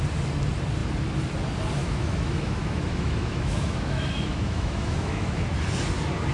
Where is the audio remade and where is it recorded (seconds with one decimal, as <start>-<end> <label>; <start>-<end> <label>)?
0.0-1.8 recorded; 1.8-5.4 remade; 5.4-6.3 recorded

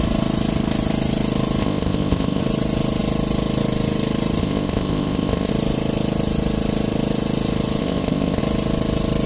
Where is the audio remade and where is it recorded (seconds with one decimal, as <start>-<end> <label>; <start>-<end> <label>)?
0.0-1.6 recorded; 1.6-2.4 remade; 2.4-4.4 recorded; 4.4-5.5 remade; 5.5-7.8 recorded; 7.8-8.4 remade; 8.4-9.3 recorded

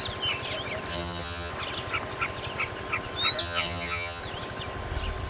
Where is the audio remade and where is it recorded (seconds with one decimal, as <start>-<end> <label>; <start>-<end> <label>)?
0.0-0.9 recorded; 0.9-1.5 remade; 1.5-3.4 recorded; 3.4-4.2 remade; 4.2-5.3 recorded